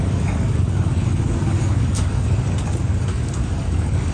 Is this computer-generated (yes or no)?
yes